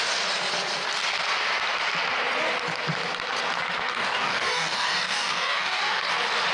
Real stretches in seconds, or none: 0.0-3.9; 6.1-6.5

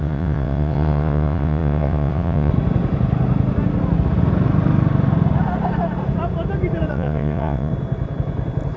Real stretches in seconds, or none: 2.5-6.9; 7.7-8.8

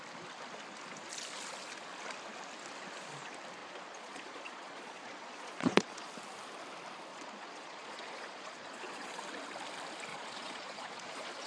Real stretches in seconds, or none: 0.0-3.6; 6.1-7.1; 9.2-10.1